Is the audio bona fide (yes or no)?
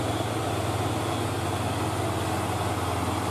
yes